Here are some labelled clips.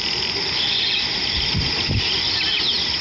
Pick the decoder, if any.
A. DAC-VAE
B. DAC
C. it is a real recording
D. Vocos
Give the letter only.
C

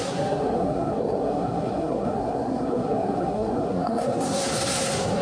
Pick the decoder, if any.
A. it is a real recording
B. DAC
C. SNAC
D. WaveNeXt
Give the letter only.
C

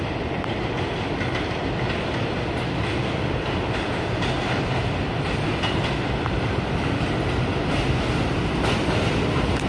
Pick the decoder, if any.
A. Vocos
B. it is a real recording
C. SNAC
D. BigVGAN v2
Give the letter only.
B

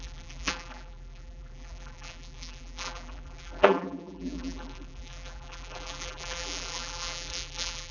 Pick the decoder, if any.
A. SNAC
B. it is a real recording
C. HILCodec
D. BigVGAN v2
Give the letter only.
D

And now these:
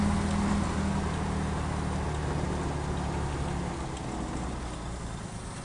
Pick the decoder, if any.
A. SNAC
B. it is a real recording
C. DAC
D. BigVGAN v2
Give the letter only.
B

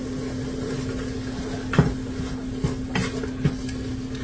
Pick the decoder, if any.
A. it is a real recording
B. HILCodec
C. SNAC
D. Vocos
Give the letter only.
A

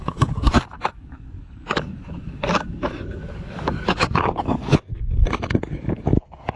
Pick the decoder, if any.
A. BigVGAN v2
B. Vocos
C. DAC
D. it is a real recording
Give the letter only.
C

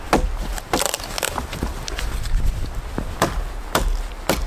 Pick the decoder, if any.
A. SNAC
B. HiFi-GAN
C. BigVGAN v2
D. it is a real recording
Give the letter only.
D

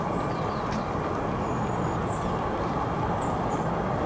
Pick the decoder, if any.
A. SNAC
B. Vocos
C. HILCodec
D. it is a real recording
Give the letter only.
D